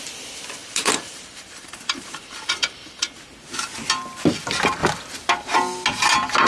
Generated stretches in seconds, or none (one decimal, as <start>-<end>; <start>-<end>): 0.6-3.2